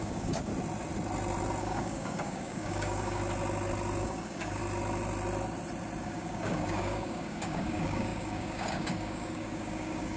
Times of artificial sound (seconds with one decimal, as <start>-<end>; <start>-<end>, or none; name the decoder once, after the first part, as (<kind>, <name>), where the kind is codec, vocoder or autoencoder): 0.0-0.5 (codec, DAC); 1.6-3.2; 4.0-4.6; 6.0-10.2